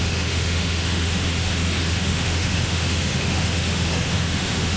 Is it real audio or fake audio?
fake